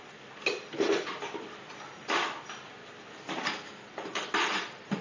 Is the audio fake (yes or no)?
no